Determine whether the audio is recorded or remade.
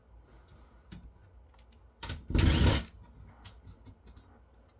recorded